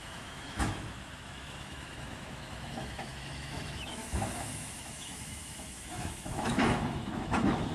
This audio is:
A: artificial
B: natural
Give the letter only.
A